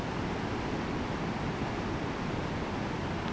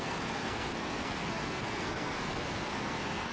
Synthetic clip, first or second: second